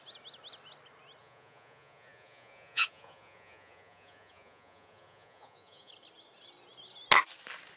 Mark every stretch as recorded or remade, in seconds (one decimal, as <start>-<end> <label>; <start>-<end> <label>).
0.0-1.2 recorded; 1.2-5.9 remade; 5.9-7.8 recorded